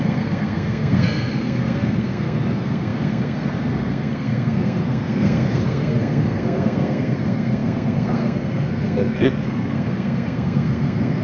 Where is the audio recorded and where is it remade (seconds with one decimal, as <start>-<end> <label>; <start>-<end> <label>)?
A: 0.0-11.2 remade